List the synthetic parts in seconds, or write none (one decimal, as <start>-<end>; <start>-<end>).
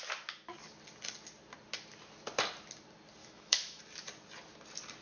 3.2-3.8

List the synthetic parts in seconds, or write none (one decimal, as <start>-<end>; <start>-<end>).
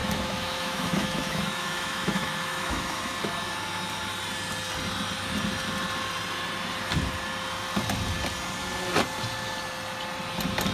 0.0-3.1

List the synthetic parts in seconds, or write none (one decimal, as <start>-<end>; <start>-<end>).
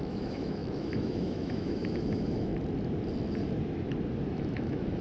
0.0-2.5; 4.3-5.0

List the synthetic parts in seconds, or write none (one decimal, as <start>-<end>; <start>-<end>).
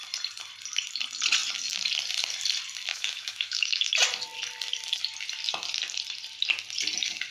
2.9-3.9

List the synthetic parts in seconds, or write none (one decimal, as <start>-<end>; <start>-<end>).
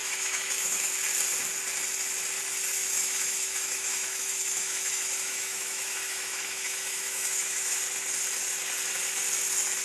0.0-0.9; 2.8-7.8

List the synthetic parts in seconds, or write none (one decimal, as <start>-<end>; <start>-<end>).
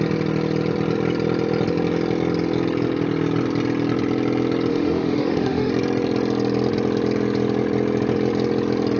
4.7-5.7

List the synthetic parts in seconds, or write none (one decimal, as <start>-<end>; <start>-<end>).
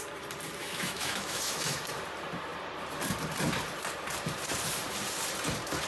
0.6-1.8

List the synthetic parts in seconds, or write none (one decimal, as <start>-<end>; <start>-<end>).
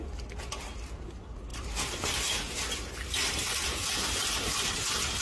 none